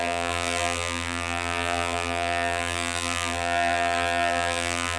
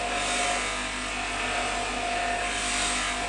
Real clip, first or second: second